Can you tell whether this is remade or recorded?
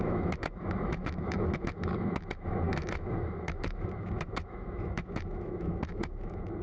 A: remade